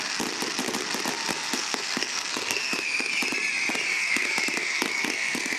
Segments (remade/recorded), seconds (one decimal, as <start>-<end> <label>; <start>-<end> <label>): 0.0-1.3 recorded; 1.3-3.1 remade; 3.1-3.9 recorded; 3.9-5.6 remade